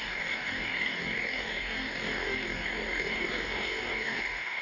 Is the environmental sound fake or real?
fake